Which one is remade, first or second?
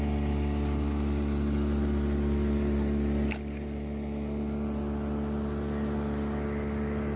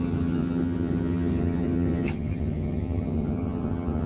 second